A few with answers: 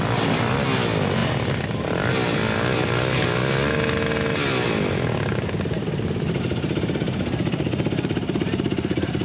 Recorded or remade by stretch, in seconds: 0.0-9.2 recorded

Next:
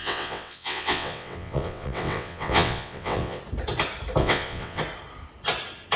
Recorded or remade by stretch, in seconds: 0.0-3.4 remade; 3.4-4.2 recorded; 4.2-4.8 remade; 4.8-6.0 recorded

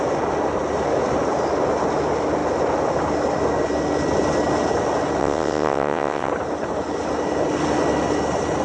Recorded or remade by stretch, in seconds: 0.0-5.2 recorded; 5.2-6.3 remade; 6.3-8.6 recorded

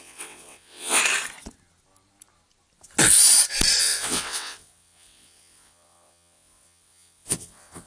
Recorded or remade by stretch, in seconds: 0.0-1.0 remade; 1.0-3.8 recorded; 3.8-7.9 remade

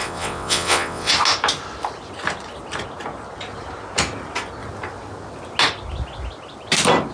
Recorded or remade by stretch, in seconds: 0.0-1.1 remade; 1.1-7.1 recorded

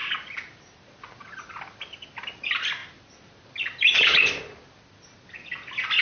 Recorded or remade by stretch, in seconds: 0.0-6.0 recorded

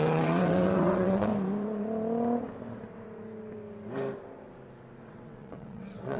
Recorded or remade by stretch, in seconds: 0.0-1.3 remade; 1.3-5.0 recorded; 5.0-6.2 remade